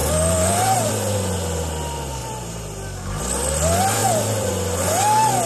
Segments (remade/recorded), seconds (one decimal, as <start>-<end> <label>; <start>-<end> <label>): 0.0-0.9 remade; 0.9-2.2 recorded; 2.2-3.2 remade; 3.2-4.0 recorded; 4.0-4.5 remade; 4.5-5.5 recorded